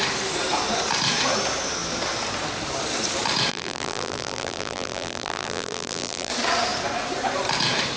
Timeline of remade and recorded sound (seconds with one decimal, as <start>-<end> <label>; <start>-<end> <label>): 0.0-3.5 recorded; 3.5-6.3 remade; 6.3-8.0 recorded